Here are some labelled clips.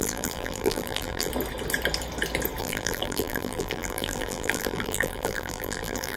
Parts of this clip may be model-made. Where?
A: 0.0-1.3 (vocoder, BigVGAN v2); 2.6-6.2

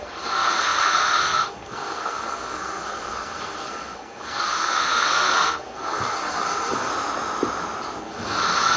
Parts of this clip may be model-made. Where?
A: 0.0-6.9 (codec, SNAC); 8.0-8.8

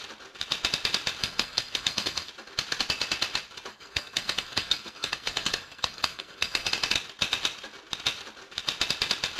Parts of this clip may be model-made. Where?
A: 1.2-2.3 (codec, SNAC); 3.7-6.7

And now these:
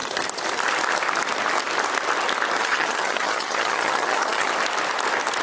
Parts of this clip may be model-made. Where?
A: 2.6-4.5 (vocoder, HiFi-GAN)